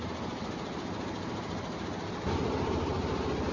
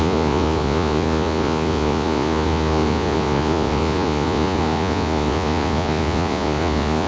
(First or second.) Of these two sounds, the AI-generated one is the second